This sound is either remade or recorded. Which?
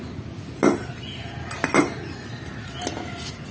recorded